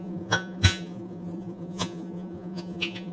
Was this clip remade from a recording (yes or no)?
yes